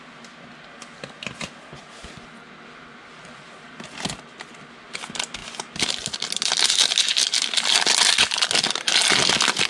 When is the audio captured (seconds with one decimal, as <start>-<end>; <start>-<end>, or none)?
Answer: 0.0-9.7

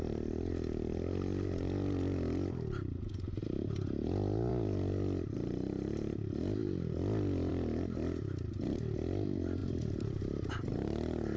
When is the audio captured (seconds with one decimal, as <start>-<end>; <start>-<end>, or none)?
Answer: 0.0-3.4; 4.5-9.6; 10.5-11.4

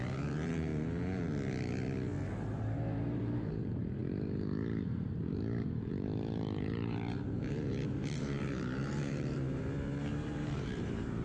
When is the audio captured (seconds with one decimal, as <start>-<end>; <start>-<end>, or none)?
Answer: 0.7-2.3

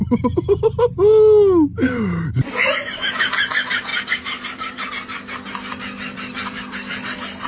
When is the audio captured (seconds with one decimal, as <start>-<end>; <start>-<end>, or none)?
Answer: 0.0-1.8; 2.5-3.9; 4.9-7.5

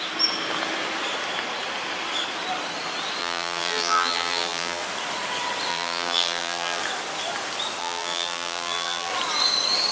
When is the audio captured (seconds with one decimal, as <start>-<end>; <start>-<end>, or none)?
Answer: 0.0-3.2; 4.8-5.7; 6.8-7.8; 9.1-9.9